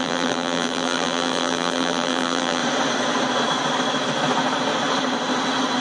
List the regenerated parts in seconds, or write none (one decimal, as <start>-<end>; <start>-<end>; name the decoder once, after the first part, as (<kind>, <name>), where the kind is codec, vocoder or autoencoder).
0.0-2.6 (vocoder, BigVGAN v2)